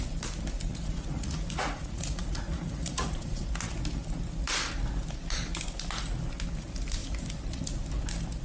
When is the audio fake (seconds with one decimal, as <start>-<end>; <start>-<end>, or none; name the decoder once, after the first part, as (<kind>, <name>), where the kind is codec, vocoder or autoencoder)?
0.7-3.5 (vocoder, Vocos)